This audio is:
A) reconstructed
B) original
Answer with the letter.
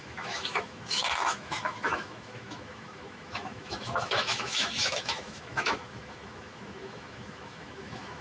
A